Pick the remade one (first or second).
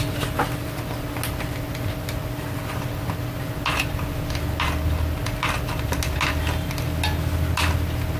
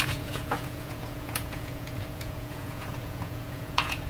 second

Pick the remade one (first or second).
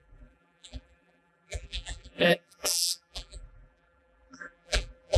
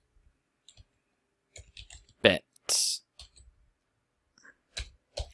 first